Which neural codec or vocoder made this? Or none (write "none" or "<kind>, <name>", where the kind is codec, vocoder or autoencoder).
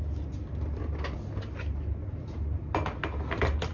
none